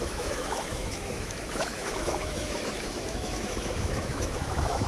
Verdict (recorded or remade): remade